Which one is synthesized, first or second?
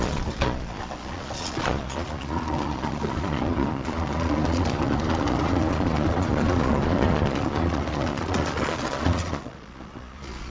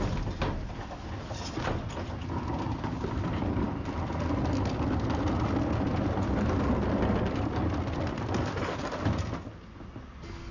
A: first